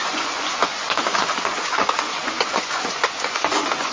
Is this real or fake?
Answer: fake